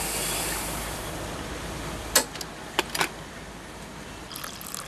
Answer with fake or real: real